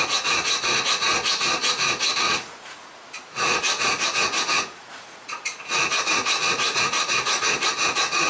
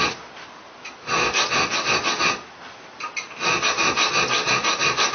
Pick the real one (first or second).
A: second